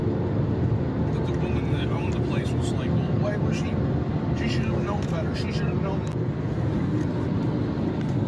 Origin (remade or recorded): recorded